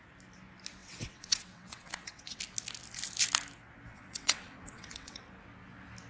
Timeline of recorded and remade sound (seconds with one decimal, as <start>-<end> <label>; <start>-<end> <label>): 0.0-0.8 recorded; 0.8-2.4 remade; 2.4-3.9 recorded; 3.9-5.2 remade; 5.2-6.1 recorded